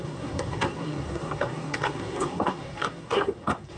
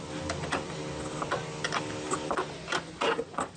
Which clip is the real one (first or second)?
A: second